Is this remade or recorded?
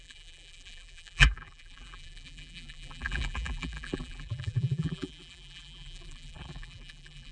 remade